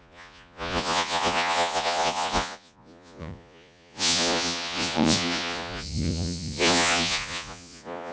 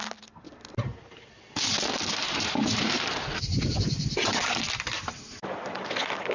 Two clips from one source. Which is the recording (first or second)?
second